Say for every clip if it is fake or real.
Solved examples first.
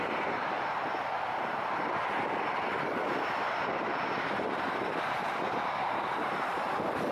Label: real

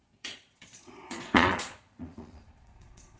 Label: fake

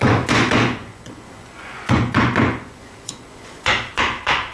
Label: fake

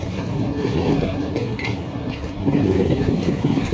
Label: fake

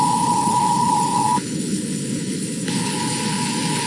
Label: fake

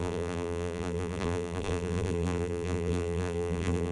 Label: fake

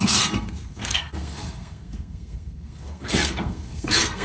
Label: fake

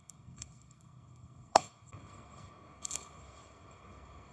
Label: fake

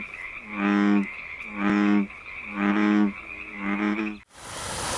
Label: real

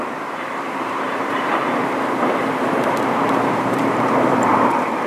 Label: fake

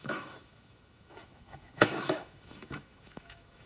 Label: fake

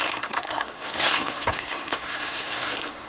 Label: fake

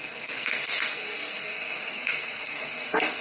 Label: fake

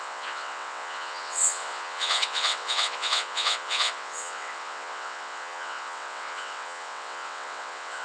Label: fake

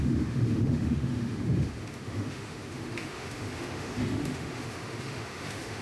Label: fake